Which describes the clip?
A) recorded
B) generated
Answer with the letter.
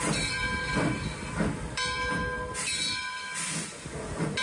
A